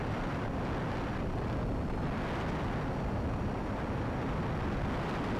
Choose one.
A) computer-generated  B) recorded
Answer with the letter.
B